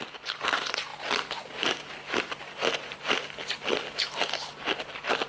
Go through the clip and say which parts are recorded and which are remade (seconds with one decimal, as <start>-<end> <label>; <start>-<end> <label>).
0.0-5.3 recorded